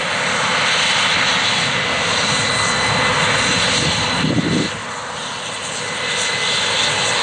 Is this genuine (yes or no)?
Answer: yes